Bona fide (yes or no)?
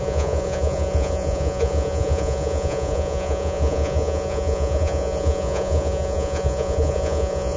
no